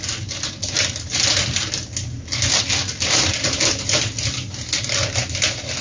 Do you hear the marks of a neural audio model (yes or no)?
no